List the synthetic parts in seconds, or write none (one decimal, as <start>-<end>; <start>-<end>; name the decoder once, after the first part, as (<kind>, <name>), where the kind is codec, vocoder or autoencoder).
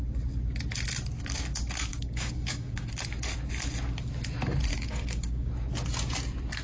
1.9-2.9 (codec, DAC); 4.7-5.5